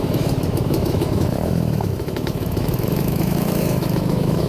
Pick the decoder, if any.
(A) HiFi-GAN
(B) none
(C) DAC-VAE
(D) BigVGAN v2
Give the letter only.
C